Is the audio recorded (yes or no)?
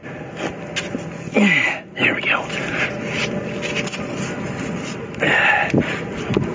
yes